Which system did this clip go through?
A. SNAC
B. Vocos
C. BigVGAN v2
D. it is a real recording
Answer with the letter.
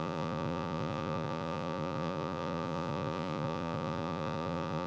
B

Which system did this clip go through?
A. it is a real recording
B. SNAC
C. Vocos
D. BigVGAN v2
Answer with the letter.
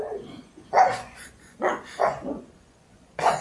C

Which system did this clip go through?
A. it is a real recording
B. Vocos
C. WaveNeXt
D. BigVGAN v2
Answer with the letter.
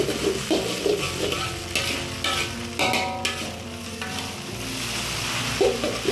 A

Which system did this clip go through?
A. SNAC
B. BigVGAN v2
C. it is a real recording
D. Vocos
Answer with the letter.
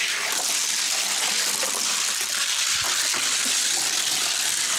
C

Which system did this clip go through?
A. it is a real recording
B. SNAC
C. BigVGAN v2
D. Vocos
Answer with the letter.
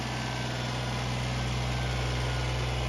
A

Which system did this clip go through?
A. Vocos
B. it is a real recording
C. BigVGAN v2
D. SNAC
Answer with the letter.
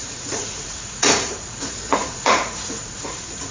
A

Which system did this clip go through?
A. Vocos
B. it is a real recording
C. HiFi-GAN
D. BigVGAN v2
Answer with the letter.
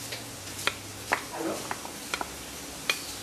B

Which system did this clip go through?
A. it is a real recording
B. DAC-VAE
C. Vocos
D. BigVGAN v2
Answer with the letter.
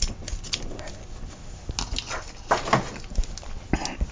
A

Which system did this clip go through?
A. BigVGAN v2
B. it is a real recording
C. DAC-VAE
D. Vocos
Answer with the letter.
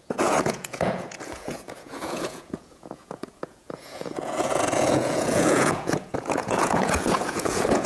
D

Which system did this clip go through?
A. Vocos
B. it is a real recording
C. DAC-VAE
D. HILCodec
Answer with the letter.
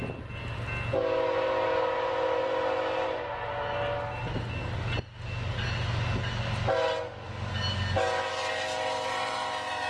B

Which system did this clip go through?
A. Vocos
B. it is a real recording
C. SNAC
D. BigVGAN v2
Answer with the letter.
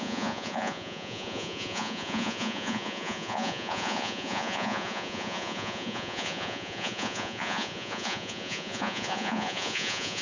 A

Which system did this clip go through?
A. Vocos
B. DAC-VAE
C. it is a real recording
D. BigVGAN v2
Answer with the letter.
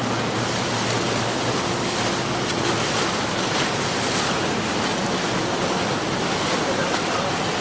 C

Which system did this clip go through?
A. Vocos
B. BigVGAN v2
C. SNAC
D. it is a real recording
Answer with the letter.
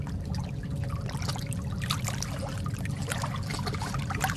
D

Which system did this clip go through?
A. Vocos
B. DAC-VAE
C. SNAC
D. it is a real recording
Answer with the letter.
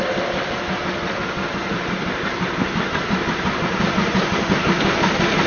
D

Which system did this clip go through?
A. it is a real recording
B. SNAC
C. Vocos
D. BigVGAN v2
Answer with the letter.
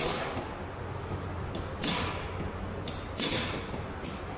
A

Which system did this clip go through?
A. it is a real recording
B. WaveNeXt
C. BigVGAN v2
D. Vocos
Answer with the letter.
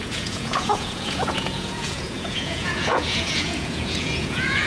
D